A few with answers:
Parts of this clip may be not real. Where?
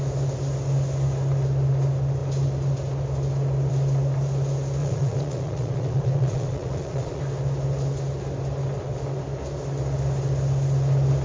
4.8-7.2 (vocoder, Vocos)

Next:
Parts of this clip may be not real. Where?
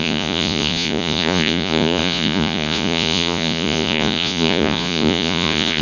0.0-5.8 (vocoder, Vocos)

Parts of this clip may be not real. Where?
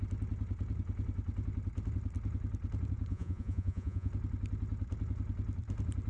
3.1-4.1 (vocoder, Vocos)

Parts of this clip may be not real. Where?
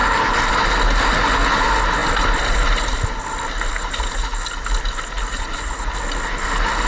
5.3-5.9 (vocoder, Vocos)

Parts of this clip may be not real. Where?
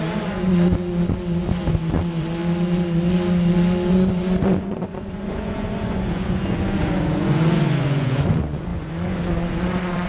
0.0-2.4 (vocoder, Vocos); 3.9-10.1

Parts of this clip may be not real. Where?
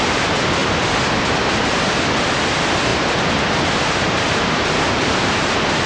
none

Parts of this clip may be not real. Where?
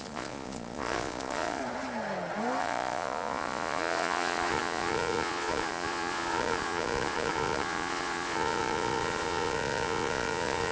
0.0-1.6 (vocoder, Vocos); 2.6-10.7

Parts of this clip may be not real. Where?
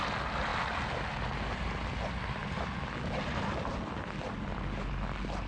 none